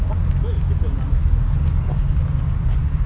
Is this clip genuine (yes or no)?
yes